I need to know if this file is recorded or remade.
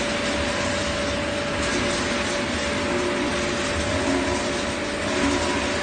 recorded